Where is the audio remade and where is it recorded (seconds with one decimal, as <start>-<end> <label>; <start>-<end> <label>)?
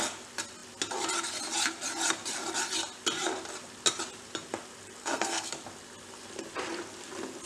0.0-5.0 recorded; 5.0-5.5 remade; 5.5-7.5 recorded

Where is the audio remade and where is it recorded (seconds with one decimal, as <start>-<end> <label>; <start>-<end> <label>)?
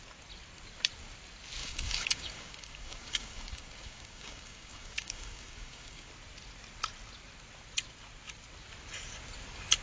0.0-1.6 recorded; 1.6-6.1 remade; 6.1-9.8 recorded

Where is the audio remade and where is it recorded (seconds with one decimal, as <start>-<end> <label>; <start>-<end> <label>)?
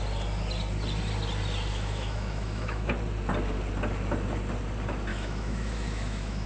0.0-1.7 recorded; 1.7-2.9 remade; 2.9-5.1 recorded; 5.1-6.5 remade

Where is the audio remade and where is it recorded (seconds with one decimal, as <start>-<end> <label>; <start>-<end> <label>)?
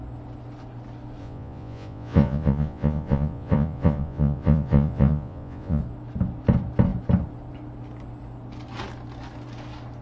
0.0-1.2 recorded; 1.2-5.8 remade; 5.8-10.0 recorded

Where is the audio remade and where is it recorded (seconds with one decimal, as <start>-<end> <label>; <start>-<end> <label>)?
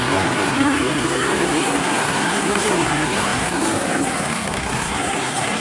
0.0-5.6 remade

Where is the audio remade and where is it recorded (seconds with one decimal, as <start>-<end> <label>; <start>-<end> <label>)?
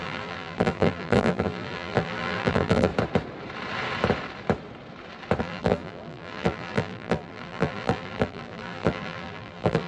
0.0-2.9 remade; 2.9-5.4 recorded; 5.4-9.9 remade